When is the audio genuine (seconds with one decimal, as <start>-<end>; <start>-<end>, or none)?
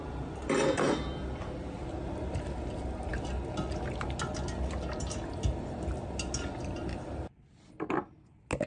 0.0-8.7